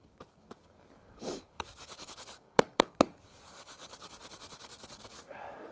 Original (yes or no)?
no